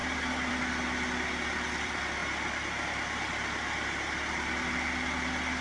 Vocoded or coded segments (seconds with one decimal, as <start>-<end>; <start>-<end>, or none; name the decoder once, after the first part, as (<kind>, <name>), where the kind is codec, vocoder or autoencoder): 0.5-2.2 (vocoder, BigVGAN v2)